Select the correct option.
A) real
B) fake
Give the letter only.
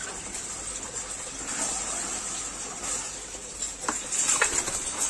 A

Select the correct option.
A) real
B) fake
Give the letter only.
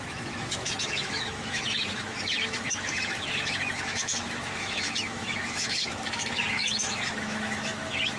B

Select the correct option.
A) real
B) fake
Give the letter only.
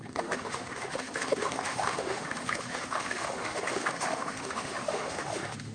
B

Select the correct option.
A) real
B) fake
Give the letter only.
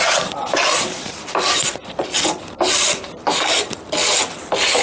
A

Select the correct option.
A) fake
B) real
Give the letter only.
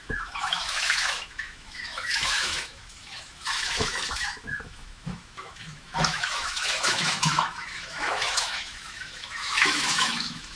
A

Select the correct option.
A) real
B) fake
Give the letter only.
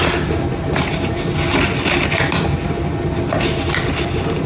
A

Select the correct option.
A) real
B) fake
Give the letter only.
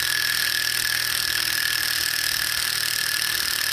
A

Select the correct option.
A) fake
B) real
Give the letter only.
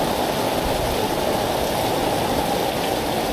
B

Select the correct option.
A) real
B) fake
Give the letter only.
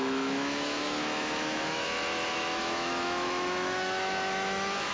B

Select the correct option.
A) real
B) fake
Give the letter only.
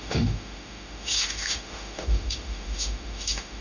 B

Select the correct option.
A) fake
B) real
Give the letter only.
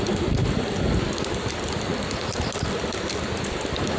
B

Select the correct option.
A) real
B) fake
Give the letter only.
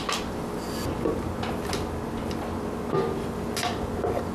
A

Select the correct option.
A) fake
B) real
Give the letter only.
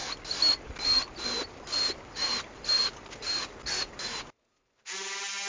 B